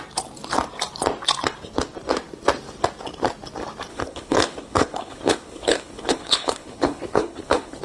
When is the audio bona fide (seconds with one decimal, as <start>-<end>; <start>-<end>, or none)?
0.0-3.9